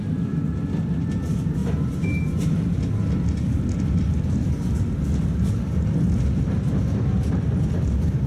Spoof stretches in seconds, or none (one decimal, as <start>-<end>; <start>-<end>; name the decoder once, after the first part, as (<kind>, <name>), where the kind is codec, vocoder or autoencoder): none